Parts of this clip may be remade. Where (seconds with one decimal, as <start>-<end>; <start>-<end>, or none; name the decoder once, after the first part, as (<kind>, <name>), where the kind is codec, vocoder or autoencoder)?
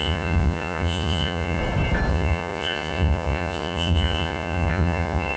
0.0-1.6 (vocoder, Vocos); 2.1-5.4